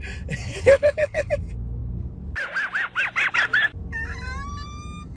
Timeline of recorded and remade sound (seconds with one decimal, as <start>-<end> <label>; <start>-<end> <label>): 0.0-0.4 recorded; 0.4-1.3 remade; 1.3-5.2 recorded